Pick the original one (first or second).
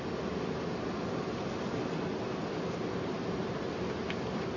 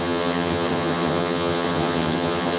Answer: first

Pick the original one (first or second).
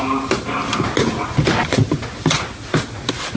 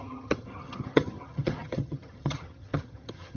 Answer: first